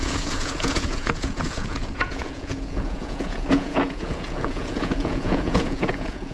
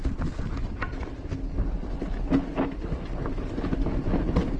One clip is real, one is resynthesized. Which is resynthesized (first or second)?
first